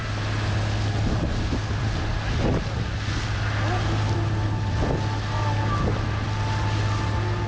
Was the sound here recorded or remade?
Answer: recorded